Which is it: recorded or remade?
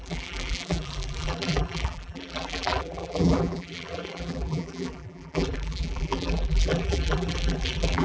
remade